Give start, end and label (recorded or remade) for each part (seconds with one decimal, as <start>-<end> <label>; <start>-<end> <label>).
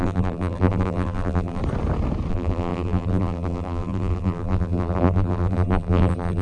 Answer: 0.0-1.6 remade; 1.6-2.3 recorded; 2.3-6.4 remade